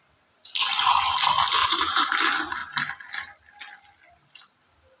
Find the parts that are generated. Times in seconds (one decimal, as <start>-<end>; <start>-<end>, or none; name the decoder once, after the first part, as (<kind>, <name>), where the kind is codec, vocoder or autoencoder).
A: 1.6-2.1 (vocoder, BigVGAN v2)